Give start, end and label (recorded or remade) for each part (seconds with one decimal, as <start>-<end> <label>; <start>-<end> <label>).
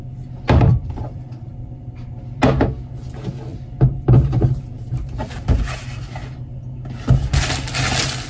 0.0-0.7 recorded; 0.7-2.4 remade; 2.4-3.5 recorded; 3.5-5.6 remade; 5.6-8.3 recorded